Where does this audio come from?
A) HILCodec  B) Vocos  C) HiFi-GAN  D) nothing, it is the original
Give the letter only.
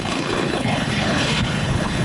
A